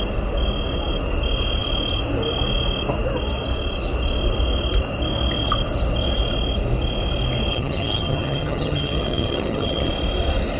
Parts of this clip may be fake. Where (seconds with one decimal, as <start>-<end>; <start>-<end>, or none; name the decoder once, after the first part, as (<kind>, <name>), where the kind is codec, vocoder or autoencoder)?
7.5-9.9 (vocoder, HiFi-GAN)